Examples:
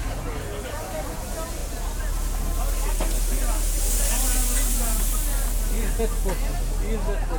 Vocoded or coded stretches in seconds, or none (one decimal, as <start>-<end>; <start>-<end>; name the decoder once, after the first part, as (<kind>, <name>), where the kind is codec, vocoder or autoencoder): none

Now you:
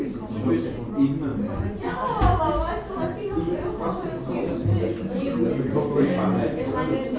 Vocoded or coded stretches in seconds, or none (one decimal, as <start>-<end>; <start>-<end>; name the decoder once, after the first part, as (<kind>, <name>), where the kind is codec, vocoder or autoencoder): none

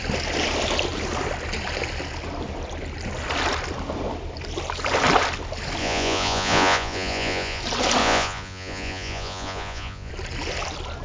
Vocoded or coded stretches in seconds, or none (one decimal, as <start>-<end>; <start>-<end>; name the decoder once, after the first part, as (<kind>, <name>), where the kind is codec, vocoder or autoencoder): 5.8-7.6 (vocoder, Vocos); 8.0-10.1

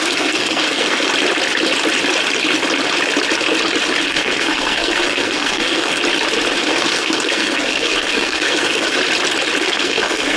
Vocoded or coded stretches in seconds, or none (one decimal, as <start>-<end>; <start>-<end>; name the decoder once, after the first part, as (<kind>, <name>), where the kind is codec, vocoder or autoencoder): 0.0-1.1 (codec, SNAC); 4.1-6.0; 6.6-9.0; 9.6-10.4

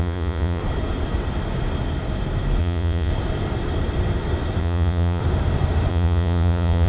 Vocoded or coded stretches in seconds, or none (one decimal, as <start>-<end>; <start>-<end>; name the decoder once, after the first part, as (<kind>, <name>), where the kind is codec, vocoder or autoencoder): 0.0-0.6 (vocoder, Vocos); 2.6-3.1; 4.6-5.2; 5.9-6.9